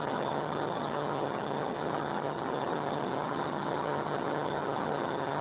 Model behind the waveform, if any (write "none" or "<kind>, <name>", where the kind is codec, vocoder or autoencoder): vocoder, HiFi-GAN